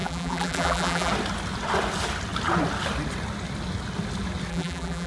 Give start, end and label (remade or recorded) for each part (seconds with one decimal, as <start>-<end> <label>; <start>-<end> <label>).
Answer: 0.0-1.1 remade; 1.1-4.5 recorded; 4.5-5.1 remade